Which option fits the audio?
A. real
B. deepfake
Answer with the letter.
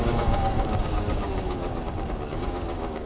B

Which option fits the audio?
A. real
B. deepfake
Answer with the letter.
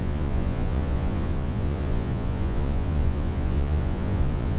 B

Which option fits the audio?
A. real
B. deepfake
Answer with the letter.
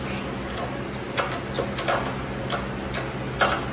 A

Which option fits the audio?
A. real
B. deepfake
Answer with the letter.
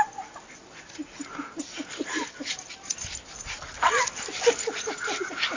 A